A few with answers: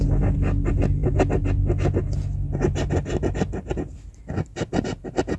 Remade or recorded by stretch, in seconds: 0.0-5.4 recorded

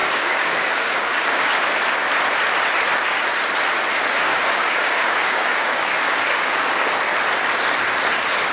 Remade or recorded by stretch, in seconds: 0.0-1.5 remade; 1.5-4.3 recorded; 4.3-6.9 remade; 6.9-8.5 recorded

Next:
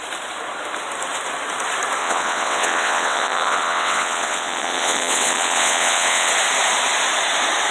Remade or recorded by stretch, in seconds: 0.0-2.0 recorded; 2.0-6.3 remade; 6.3-7.7 recorded

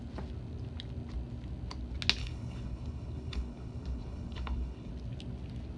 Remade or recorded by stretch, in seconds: 0.0-2.2 recorded; 2.2-4.9 remade; 4.9-5.8 recorded

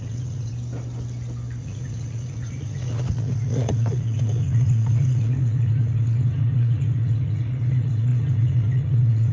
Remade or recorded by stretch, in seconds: 0.0-0.5 remade; 0.5-1.6 recorded; 1.6-9.3 remade